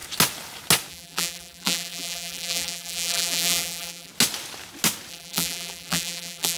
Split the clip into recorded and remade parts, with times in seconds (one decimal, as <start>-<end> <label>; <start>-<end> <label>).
0.0-0.9 recorded; 0.9-4.1 remade; 4.1-5.1 recorded; 5.1-6.6 remade